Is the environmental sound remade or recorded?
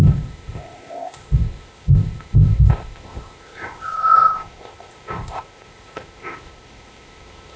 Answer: remade